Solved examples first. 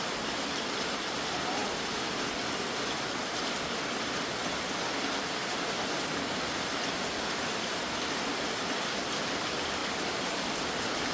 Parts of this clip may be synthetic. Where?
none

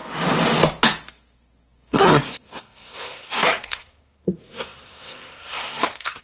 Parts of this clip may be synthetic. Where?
1.1-6.2 (codec, SNAC)

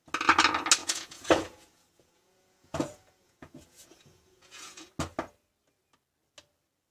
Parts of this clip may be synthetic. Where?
0.8-4.9 (vocoder, Vocos)